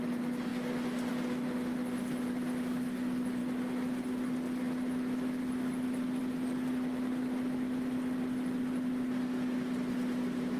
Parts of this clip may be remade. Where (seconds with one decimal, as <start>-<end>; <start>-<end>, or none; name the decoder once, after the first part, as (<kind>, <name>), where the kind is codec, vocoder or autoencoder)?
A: none